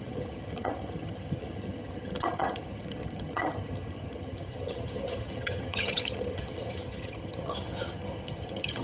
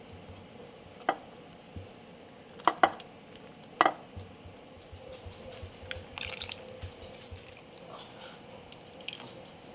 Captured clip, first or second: second